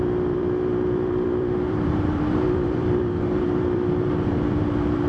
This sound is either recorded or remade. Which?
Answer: remade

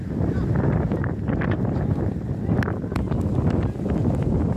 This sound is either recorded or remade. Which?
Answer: recorded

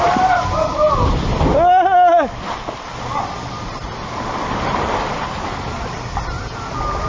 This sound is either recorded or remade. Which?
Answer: recorded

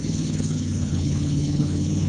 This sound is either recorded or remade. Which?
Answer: remade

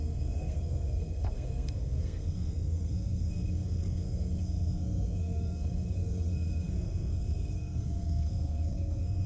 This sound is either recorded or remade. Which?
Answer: remade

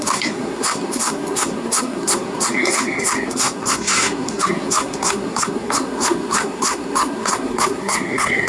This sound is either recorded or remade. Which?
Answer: remade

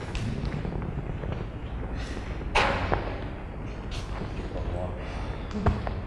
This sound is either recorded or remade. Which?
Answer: recorded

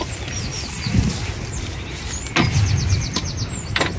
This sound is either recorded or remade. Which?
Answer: recorded